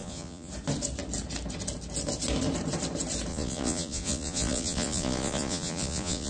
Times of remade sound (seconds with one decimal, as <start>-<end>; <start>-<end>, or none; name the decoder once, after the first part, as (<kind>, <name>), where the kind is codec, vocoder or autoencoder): 0.0-0.5 (vocoder, Vocos); 3.3-6.3